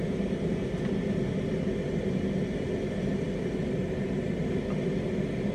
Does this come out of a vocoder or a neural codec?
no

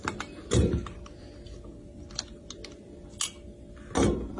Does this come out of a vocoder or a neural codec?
no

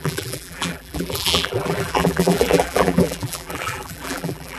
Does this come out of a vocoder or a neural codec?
yes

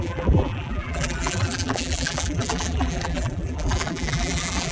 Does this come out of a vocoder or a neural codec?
yes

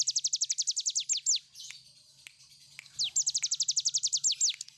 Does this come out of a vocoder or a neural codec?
no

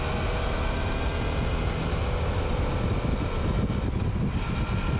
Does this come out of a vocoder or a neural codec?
no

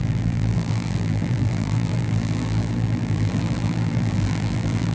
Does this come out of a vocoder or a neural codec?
yes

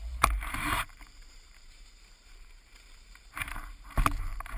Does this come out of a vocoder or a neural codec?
yes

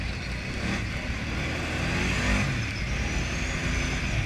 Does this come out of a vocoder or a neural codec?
no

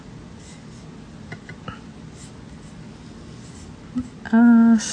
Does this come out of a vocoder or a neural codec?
no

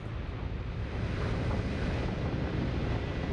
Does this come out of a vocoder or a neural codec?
no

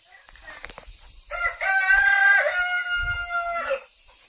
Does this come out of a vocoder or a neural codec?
yes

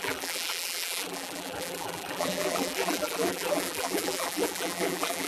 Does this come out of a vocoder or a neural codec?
yes